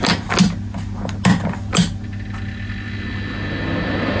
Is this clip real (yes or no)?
yes